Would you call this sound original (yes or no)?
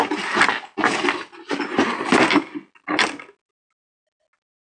yes